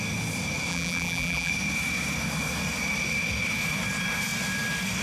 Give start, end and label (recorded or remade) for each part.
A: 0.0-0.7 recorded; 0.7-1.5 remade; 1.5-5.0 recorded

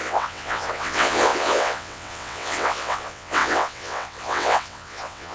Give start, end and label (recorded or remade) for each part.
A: 0.0-5.3 remade